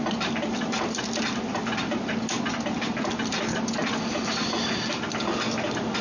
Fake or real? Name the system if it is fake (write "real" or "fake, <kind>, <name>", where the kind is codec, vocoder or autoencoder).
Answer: real